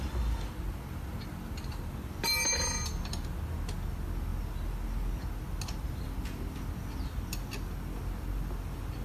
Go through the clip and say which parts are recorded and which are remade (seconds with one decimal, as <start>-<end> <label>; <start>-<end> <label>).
0.0-9.0 recorded

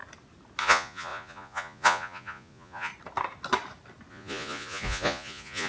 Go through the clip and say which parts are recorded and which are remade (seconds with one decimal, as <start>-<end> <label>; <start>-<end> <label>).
0.0-0.6 recorded; 0.6-2.9 remade; 2.9-4.1 recorded; 4.1-5.7 remade

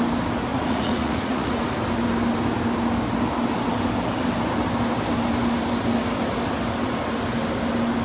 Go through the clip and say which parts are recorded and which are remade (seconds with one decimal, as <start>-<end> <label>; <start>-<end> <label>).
0.0-0.5 recorded; 0.5-1.6 remade; 1.6-8.0 recorded

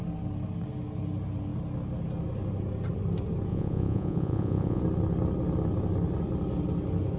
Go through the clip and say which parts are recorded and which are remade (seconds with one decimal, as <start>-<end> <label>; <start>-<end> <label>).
0.0-3.5 recorded; 3.5-4.8 remade; 4.8-7.2 recorded

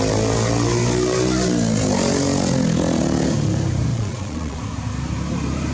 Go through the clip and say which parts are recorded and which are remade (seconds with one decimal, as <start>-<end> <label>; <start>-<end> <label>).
0.0-3.9 recorded; 3.9-4.6 remade; 4.6-5.7 recorded

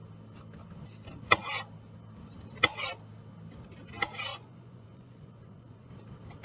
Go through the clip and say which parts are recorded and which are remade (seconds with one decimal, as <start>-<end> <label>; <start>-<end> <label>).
0.0-4.3 recorded; 4.3-5.9 remade; 5.9-6.4 recorded

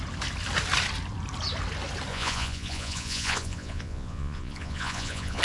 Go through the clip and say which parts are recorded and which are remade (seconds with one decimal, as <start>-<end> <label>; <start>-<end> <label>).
0.0-2.1 recorded; 2.1-5.4 remade

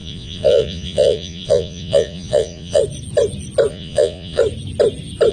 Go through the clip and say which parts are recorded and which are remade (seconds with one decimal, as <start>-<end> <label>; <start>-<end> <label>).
0.0-2.8 remade; 2.8-3.7 recorded; 3.7-4.4 remade; 4.4-5.3 recorded